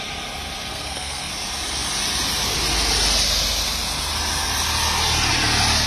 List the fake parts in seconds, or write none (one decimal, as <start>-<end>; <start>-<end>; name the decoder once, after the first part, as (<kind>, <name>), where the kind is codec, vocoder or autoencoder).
0.7-1.3 (codec, SNAC)

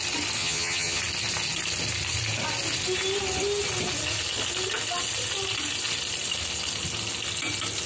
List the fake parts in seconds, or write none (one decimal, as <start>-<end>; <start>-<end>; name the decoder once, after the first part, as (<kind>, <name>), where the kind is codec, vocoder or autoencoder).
0.4-1.0 (vocoder, HiFi-GAN)

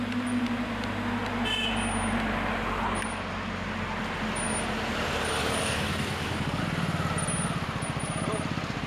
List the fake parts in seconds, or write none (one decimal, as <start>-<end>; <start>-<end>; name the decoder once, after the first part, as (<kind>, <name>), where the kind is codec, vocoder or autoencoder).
5.4-6.6 (codec, DAC)

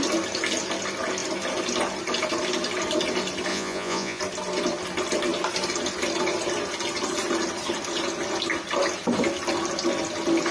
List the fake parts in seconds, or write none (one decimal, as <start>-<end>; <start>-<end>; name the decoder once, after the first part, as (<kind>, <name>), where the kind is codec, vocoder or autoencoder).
3.5-4.2 (vocoder, Vocos)

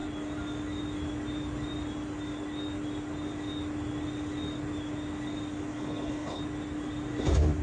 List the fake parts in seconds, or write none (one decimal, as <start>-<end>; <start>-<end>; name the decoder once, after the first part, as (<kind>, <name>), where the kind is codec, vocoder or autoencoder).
5.7-6.4 (codec, HILCodec)

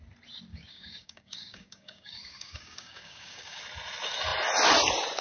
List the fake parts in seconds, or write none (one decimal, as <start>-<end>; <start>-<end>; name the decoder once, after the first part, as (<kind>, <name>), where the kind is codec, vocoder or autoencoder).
0.5-3.6 (codec, DAC)

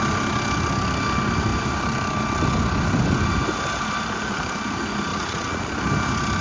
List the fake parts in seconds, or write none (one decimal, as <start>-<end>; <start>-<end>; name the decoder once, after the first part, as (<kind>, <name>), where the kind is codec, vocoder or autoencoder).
5.1-5.7 (vocoder, Vocos)